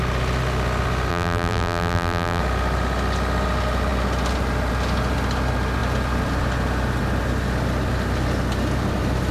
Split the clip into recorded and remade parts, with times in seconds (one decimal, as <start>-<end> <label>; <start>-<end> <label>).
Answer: 0.0-1.1 recorded; 1.1-2.4 remade; 2.4-9.3 recorded